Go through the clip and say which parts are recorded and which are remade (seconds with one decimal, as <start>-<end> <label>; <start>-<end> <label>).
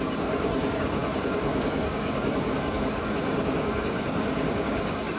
0.0-5.2 remade